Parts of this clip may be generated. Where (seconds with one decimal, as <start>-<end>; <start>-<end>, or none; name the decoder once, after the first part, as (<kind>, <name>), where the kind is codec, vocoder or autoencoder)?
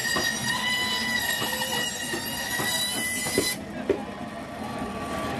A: none